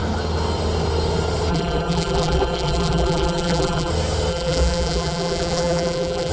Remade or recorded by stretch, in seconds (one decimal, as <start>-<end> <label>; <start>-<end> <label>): 0.0-1.5 recorded; 1.5-3.9 remade; 3.9-4.3 recorded; 4.3-6.3 remade

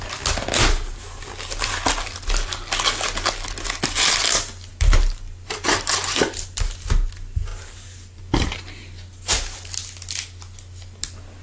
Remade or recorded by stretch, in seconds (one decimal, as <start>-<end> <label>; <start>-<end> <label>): 0.0-4.7 recorded; 4.7-6.7 remade; 6.7-7.5 recorded; 7.5-8.2 remade; 8.2-11.4 recorded

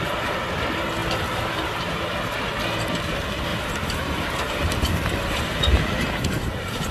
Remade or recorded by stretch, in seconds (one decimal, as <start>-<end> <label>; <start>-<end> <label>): 0.0-3.5 recorded; 3.5-6.9 remade

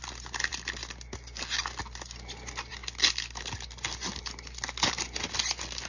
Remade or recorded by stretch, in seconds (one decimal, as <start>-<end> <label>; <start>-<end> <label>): 0.0-5.9 recorded